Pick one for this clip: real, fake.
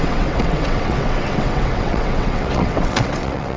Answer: fake